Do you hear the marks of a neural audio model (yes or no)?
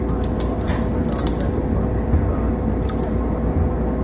no